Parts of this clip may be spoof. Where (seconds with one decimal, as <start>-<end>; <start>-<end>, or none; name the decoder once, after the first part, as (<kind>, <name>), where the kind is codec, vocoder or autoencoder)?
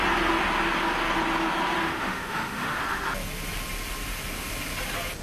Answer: 1.8-2.8 (autoencoder, DAC-VAE)